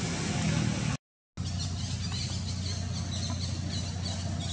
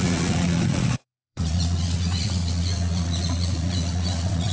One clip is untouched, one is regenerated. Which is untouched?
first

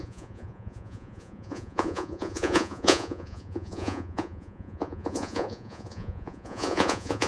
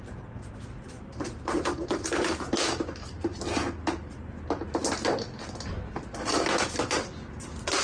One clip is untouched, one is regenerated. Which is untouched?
second